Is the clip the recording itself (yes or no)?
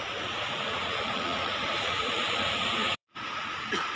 no